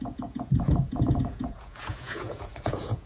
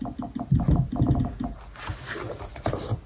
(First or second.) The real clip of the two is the second